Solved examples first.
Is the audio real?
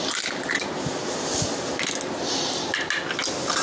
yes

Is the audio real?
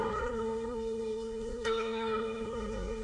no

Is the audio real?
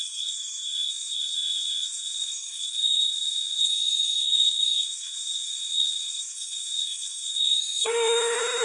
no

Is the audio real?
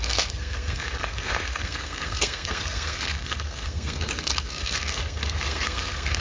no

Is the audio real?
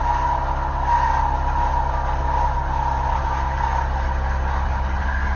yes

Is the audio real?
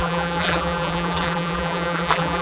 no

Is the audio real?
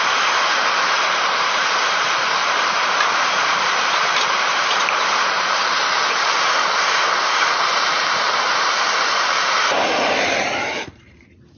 no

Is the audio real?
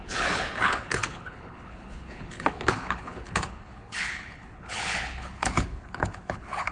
no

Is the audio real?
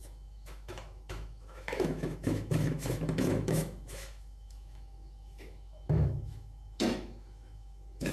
no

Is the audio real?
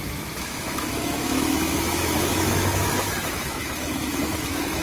no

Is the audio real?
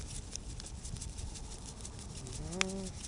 yes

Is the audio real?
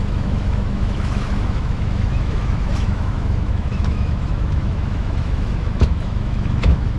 no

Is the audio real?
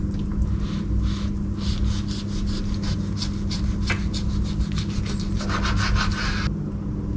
yes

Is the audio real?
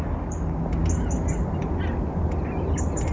yes